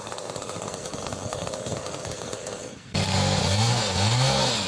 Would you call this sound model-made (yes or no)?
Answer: yes